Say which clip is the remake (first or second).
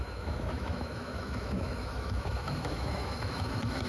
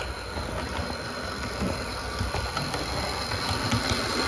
first